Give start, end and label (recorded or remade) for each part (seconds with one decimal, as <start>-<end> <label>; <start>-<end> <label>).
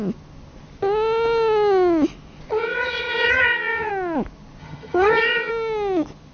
0.0-2.5 recorded; 2.5-3.9 remade; 3.9-4.6 recorded; 4.6-5.5 remade; 5.5-6.3 recorded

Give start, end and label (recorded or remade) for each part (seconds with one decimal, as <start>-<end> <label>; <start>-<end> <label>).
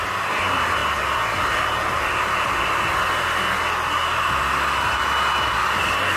0.0-6.2 recorded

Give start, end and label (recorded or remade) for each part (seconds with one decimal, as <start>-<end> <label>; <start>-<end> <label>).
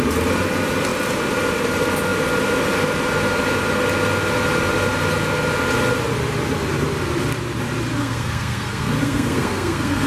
0.0-8.0 recorded; 8.0-10.1 remade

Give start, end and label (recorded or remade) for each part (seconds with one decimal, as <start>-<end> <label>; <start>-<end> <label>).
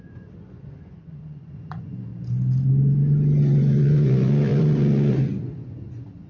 0.0-2.1 remade; 2.1-3.4 recorded; 3.4-6.3 remade